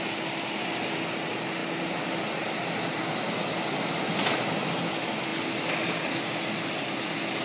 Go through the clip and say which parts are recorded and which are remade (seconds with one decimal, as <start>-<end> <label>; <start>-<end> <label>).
0.0-7.4 recorded

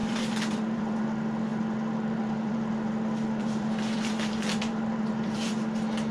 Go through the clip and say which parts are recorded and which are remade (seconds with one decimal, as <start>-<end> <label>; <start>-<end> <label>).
0.0-1.0 remade; 1.0-1.5 recorded; 1.5-2.6 remade; 2.6-3.4 recorded; 3.4-5.5 remade; 5.5-6.1 recorded

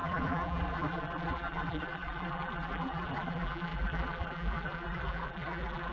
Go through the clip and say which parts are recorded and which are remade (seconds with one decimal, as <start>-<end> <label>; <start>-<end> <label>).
0.0-5.9 remade

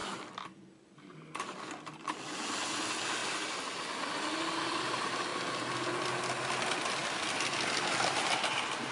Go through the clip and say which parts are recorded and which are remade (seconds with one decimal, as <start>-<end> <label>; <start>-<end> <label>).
0.0-1.7 remade; 1.7-3.2 recorded; 3.2-4.8 remade; 4.8-7.0 recorded; 7.0-8.2 remade; 8.2-8.9 recorded

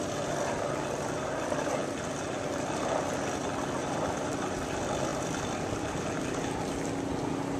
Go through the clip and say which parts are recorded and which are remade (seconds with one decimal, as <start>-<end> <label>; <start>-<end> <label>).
0.0-7.6 recorded

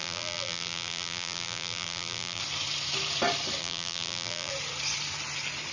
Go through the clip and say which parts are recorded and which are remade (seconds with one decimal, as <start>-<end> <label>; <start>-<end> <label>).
0.0-2.4 remade; 2.4-3.6 recorded; 3.6-4.5 remade; 4.5-5.7 recorded

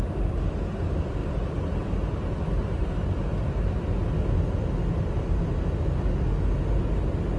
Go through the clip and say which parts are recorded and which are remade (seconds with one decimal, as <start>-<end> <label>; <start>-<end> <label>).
0.0-7.4 recorded

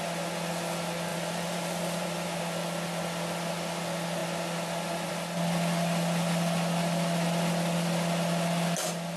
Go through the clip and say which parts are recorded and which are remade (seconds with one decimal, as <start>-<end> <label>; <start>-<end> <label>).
0.0-1.1 recorded; 1.1-2.4 remade; 2.4-9.2 recorded